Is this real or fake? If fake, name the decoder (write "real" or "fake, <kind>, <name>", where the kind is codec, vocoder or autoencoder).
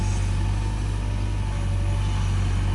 real